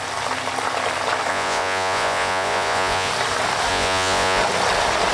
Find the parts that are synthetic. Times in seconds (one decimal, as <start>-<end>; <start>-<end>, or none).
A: 1.3-3.1; 3.7-4.4